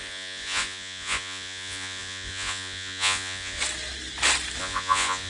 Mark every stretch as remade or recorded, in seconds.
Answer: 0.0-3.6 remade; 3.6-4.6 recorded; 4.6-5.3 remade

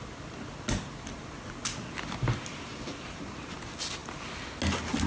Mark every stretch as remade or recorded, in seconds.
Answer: 0.0-5.1 recorded

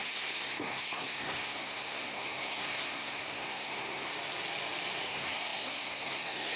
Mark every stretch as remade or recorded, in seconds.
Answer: 0.0-4.1 remade; 4.1-5.0 recorded; 5.0-6.6 remade

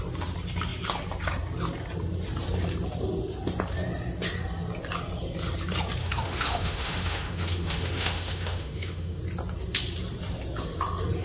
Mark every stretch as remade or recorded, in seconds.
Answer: 0.0-6.0 recorded; 6.0-9.2 remade; 9.2-11.2 recorded

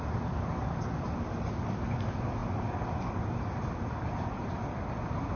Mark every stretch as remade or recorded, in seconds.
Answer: 0.0-5.4 recorded